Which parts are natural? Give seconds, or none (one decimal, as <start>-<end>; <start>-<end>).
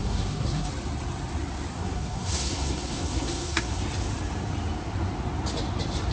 0.7-1.7; 3.8-6.1